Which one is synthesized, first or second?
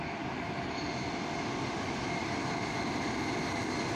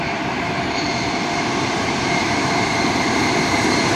second